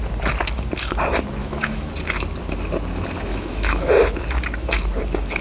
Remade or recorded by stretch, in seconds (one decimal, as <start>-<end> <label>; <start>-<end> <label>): 0.0-1.4 recorded; 1.4-1.9 remade; 1.9-3.3 recorded; 3.3-3.9 remade; 3.9-5.4 recorded